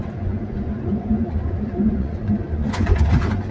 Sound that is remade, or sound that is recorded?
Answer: remade